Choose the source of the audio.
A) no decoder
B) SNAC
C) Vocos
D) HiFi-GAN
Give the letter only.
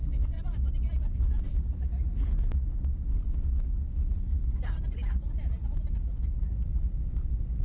A